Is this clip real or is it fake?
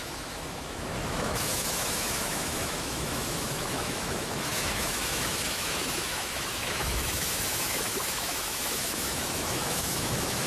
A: fake